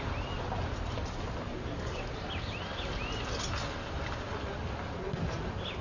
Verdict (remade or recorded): recorded